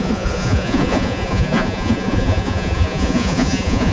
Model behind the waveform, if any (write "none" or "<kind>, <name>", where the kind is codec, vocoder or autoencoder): vocoder, Vocos